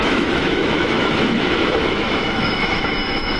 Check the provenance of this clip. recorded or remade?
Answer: remade